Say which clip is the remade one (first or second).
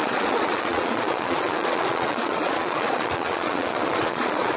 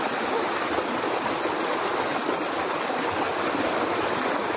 first